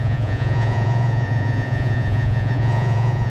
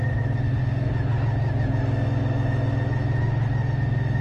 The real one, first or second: second